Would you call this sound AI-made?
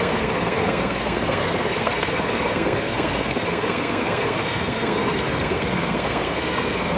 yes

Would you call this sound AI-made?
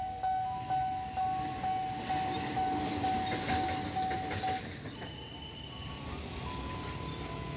no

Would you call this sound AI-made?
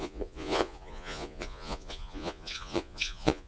yes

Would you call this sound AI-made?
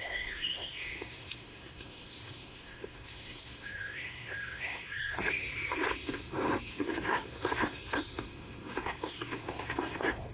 yes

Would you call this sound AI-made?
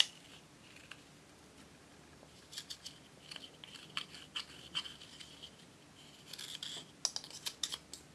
no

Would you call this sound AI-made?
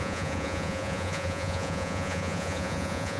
yes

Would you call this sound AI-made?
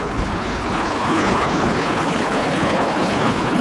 yes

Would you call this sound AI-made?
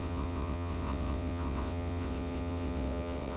yes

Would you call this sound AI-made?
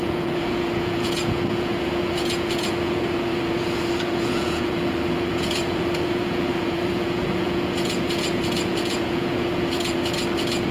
yes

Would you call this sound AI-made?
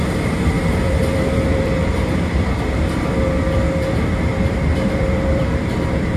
yes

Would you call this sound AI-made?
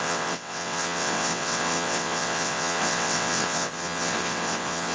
yes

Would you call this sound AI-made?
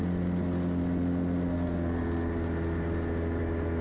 no